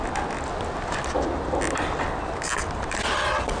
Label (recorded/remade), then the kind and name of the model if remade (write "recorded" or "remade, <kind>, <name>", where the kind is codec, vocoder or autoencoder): recorded